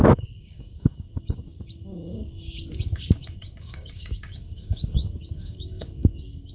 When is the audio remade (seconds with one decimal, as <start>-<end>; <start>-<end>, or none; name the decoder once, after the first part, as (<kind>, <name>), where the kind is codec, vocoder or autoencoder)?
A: 0.0-6.5 (codec, DAC)